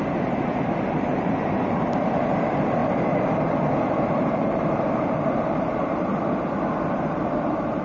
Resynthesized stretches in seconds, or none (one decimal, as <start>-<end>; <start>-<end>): 0.0-6.1; 7.0-7.8